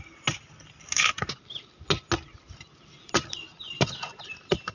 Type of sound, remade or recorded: recorded